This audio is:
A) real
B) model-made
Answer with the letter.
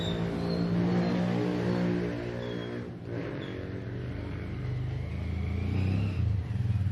A